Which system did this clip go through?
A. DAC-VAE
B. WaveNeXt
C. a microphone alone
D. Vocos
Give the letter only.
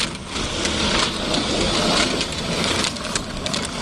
C